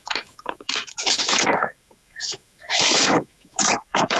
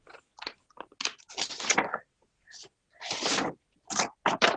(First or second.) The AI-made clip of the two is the first